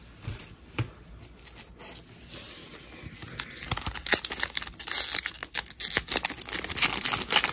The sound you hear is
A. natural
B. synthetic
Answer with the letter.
A